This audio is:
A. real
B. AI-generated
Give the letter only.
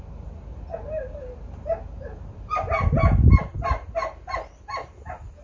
A